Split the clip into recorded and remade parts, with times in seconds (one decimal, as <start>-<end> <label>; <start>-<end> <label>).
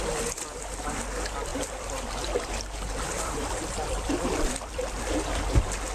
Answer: 0.0-1.5 recorded; 1.5-5.0 remade; 5.0-5.9 recorded